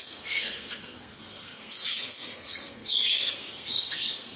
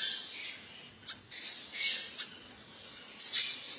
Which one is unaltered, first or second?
second